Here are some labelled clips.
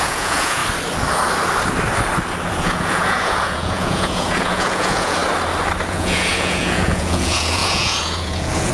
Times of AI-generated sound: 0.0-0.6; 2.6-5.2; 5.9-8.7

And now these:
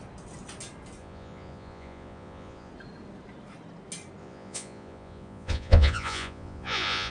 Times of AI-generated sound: 1.0-2.7; 4.2-7.1

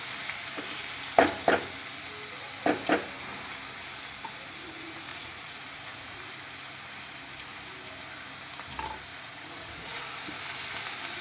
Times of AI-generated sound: 5.1-6.2; 9.1-10.0

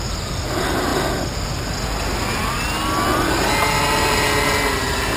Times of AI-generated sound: none

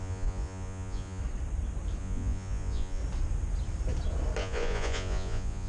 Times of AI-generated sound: 0.0-1.2; 2.0-3.0; 4.4-5.7

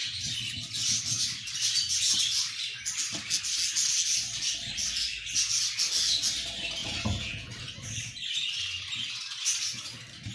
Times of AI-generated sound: 6.8-7.5